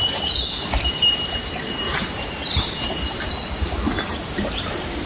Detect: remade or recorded remade